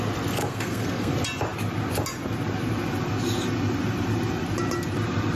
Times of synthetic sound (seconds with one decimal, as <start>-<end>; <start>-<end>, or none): 0.4-1.1